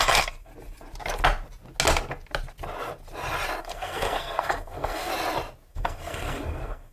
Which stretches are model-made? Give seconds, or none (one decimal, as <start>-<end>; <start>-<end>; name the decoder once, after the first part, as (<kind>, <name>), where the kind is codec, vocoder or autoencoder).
0.0-0.5 (codec, SNAC); 3.6-5.1; 5.7-6.9